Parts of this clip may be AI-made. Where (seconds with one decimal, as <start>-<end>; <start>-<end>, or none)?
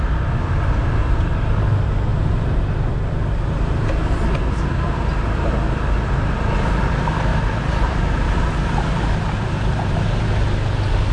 1.0-1.6; 2.1-2.6; 7.3-10.3